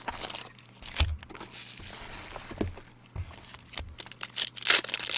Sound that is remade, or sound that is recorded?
recorded